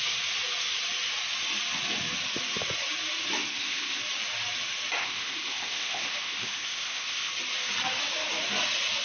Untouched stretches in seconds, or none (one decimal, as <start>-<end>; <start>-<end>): 0.0-3.5; 4.0-5.0; 7.3-9.0